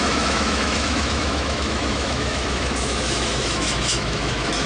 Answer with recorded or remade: remade